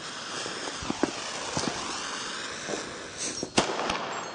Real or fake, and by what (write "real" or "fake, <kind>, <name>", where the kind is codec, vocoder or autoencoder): real